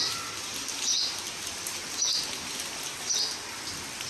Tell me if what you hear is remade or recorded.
recorded